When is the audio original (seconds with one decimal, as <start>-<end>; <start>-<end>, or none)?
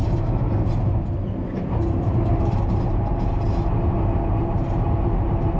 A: none